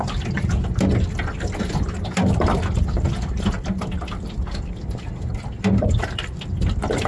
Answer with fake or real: real